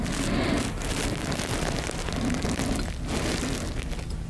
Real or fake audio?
real